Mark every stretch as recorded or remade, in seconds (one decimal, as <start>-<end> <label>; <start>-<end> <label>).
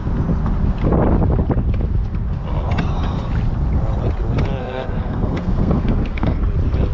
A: 0.0-4.6 recorded; 4.6-6.4 remade; 6.4-6.9 recorded